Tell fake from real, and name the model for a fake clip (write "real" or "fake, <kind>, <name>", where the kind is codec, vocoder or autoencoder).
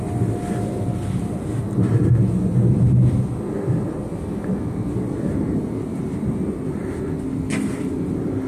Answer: real